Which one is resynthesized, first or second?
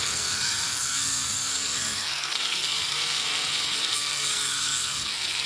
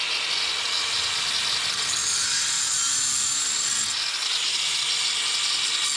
first